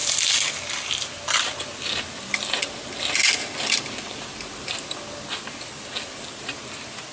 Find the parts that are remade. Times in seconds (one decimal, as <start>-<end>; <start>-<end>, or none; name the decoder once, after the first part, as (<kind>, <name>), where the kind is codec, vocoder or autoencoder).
none